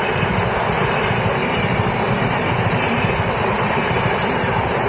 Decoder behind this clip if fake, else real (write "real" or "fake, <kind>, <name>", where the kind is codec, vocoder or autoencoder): real